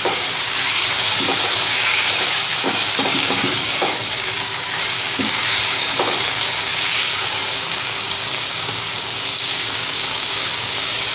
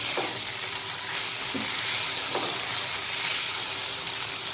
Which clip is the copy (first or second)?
first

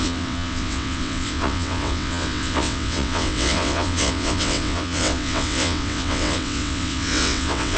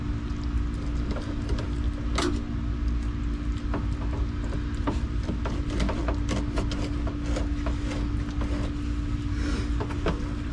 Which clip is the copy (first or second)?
first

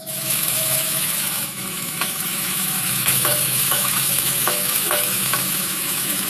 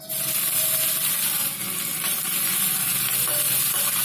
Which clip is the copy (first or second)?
first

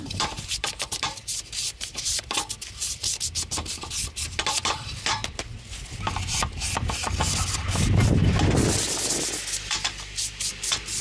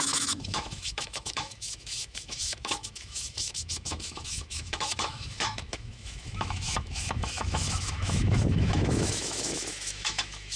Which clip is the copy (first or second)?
second